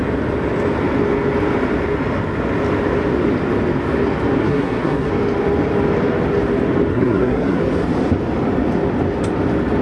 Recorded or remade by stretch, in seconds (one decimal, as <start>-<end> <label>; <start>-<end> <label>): 0.0-4.4 recorded; 4.4-5.1 remade; 5.1-6.9 recorded; 6.9-7.6 remade; 7.6-9.8 recorded